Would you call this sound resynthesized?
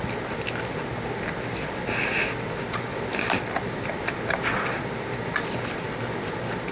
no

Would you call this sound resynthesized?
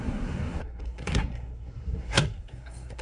yes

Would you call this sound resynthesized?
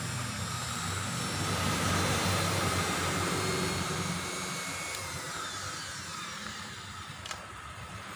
yes